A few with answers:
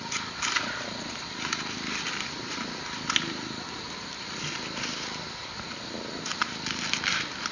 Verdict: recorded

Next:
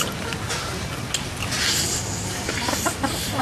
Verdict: recorded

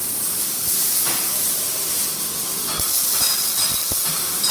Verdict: recorded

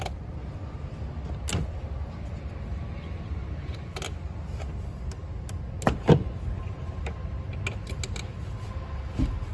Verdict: recorded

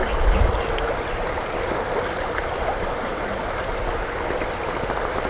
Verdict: recorded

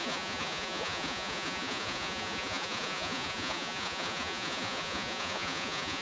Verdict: remade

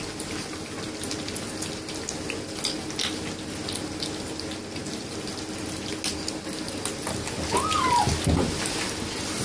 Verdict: recorded